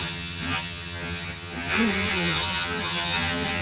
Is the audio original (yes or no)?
no